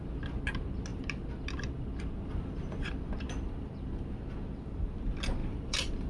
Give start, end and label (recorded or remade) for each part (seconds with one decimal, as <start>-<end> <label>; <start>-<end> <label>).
0.0-5.4 recorded; 5.4-6.1 remade